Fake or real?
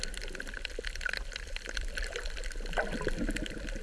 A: real